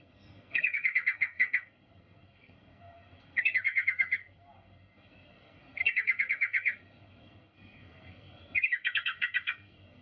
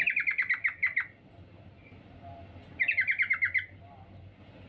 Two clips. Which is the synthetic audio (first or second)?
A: first